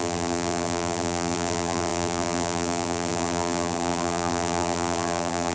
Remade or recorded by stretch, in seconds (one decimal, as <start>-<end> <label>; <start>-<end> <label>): 0.0-5.5 remade